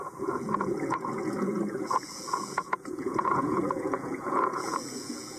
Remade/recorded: remade